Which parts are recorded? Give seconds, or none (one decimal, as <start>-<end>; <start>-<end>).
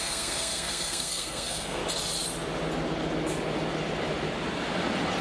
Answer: 1.8-5.2